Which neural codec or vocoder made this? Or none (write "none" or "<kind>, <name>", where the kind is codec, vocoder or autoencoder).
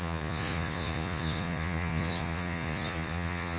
vocoder, Vocos